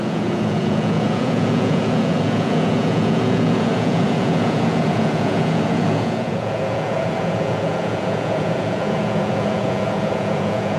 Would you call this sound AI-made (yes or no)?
yes